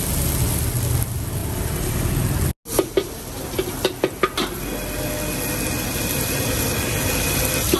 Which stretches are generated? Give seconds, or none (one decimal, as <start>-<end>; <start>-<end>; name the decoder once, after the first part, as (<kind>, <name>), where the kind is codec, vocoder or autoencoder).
1.4-2.1 (vocoder, BigVGAN v2)

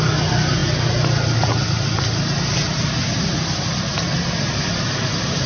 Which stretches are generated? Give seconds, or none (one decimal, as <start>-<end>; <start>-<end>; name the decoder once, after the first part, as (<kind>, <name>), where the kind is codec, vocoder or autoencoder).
none